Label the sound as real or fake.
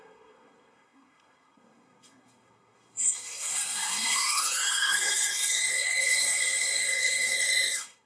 fake